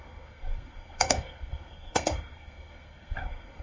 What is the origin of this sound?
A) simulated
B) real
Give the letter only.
A